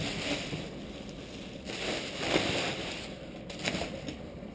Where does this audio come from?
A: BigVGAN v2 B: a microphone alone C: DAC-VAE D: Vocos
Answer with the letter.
B